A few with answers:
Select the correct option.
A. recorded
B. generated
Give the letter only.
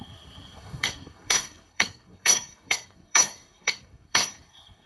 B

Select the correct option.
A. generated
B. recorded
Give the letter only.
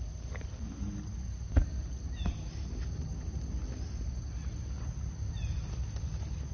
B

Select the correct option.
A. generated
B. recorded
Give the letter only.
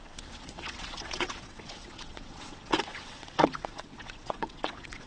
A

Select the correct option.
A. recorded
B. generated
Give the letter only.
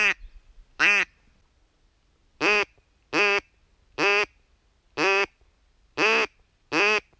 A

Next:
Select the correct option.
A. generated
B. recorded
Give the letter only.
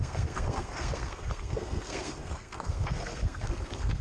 A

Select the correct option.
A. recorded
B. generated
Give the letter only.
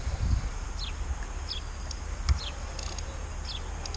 A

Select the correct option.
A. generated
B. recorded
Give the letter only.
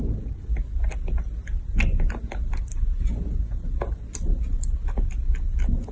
B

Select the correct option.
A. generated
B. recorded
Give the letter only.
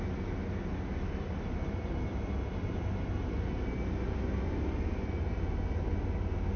B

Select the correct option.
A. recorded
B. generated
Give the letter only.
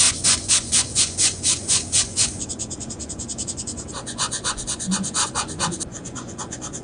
B